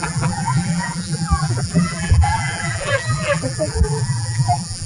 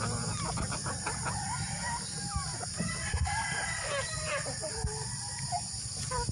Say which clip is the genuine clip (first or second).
second